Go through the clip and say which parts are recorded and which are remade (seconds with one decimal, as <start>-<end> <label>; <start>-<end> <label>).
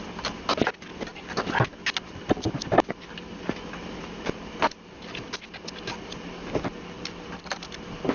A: 0.0-8.1 recorded